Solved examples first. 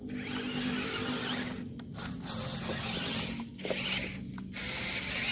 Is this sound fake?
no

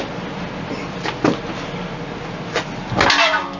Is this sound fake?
no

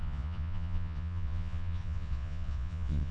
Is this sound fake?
yes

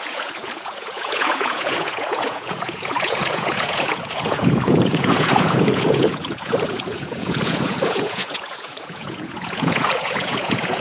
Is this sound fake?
yes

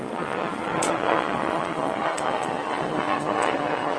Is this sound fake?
yes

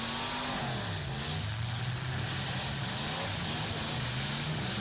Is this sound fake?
no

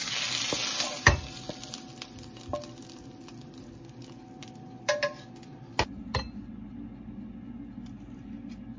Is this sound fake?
no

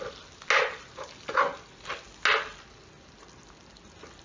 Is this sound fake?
no